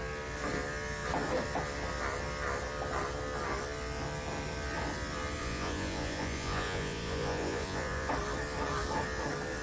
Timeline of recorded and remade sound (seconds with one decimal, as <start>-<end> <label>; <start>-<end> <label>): 0.0-5.4 recorded; 5.4-8.1 remade; 8.1-9.6 recorded